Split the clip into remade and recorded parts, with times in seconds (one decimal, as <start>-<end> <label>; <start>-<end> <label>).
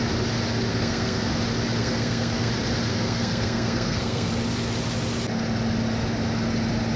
0.0-0.7 recorded; 0.7-1.3 remade; 1.3-1.8 recorded; 1.8-2.5 remade; 2.5-2.9 recorded; 2.9-4.3 remade; 4.3-7.0 recorded